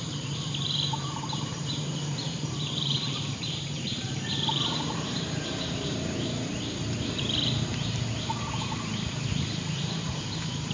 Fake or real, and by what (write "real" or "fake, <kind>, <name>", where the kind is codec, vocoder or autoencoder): fake, vocoder, BigVGAN v2